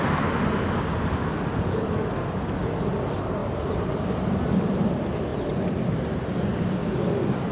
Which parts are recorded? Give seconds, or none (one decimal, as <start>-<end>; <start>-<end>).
0.0-1.5; 2.1-7.5